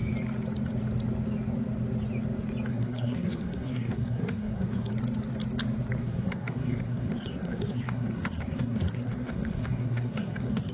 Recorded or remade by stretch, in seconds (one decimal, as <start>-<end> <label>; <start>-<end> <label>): 0.0-2.7 recorded; 2.7-4.9 remade; 4.9-6.0 recorded; 6.0-10.7 remade